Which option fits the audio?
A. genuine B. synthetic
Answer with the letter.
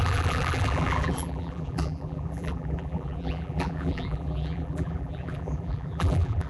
B